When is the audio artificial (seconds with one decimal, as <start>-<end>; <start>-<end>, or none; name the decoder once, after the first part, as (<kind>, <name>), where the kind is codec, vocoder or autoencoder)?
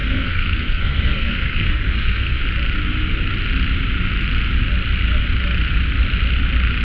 0.0-2.4 (codec, SNAC)